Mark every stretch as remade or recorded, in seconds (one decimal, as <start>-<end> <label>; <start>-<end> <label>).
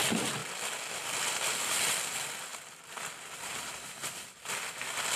0.0-5.2 recorded